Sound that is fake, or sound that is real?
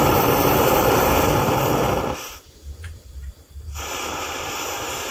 fake